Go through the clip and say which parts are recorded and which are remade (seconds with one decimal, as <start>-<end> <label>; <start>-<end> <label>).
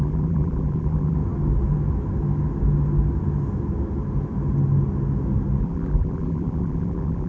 0.0-1.2 remade; 1.2-5.6 recorded; 5.6-7.3 remade